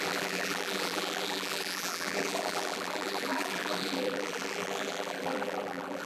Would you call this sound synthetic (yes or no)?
yes